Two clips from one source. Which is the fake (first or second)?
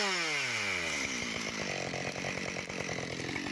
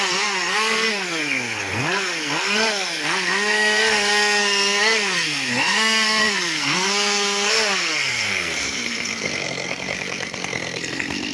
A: second